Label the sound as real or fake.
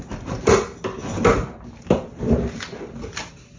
real